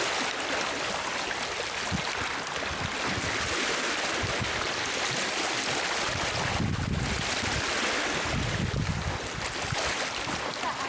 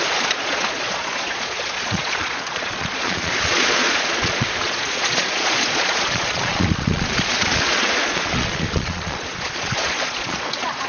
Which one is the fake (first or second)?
second